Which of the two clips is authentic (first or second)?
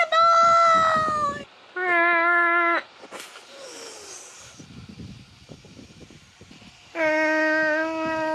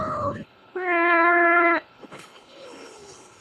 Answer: first